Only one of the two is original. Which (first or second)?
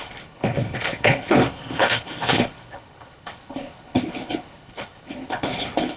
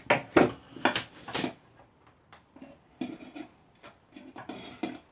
second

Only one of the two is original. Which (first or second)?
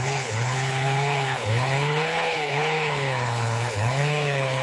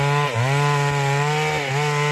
second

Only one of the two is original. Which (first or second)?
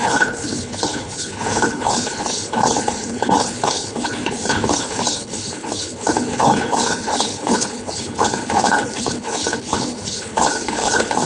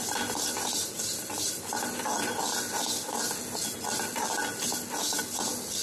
second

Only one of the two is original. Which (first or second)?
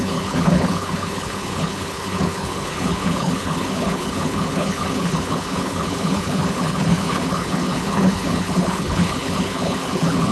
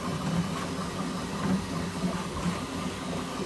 second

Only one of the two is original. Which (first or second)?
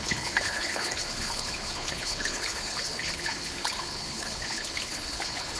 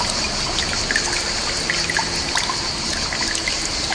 second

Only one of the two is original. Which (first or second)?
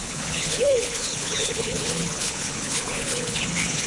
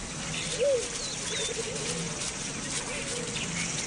second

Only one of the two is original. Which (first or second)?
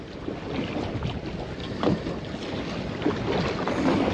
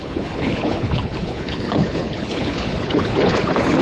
first